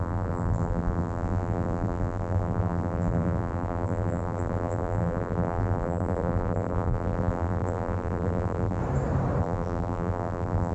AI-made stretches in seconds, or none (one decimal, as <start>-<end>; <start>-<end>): 0.0-8.8; 9.4-10.7